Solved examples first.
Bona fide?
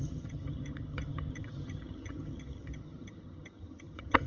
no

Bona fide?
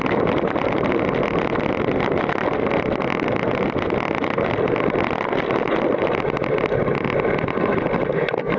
yes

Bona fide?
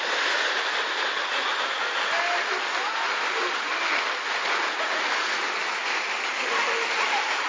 yes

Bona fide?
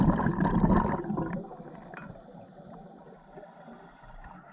yes